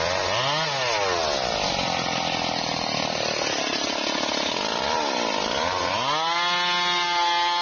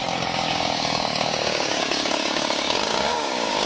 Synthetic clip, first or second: second